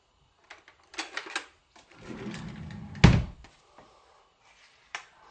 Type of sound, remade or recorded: recorded